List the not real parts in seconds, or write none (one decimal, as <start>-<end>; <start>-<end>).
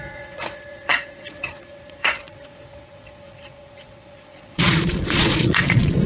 0.0-6.1